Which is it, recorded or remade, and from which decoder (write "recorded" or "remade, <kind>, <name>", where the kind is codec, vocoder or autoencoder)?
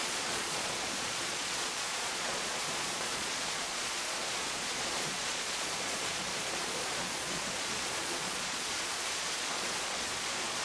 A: remade, vocoder, Vocos